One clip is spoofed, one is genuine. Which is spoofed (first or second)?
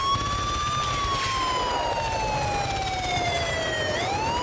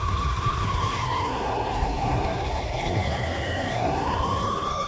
second